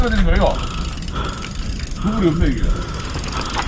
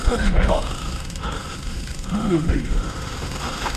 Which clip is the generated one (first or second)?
second